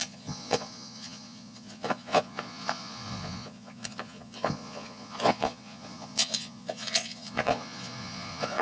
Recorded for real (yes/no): no